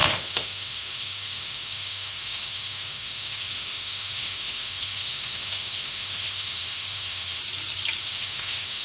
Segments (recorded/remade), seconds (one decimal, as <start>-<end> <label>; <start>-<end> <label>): 0.0-7.4 remade; 7.4-8.0 recorded; 8.0-8.8 remade

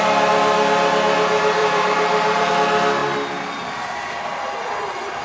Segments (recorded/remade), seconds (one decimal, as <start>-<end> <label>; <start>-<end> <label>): 0.0-1.6 recorded; 1.6-2.5 remade; 2.5-5.2 recorded

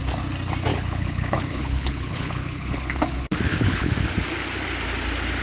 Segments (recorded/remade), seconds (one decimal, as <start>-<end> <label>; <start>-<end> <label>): 0.0-0.7 recorded; 0.7-3.9 remade; 3.9-5.4 recorded

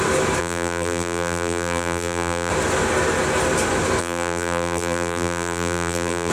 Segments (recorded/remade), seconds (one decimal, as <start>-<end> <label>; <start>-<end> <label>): 0.0-0.4 recorded; 0.4-2.5 remade; 2.5-4.0 recorded; 4.0-6.3 remade

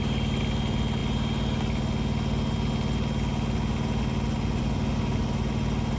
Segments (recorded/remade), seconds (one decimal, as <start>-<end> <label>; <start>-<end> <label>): 0.0-6.0 recorded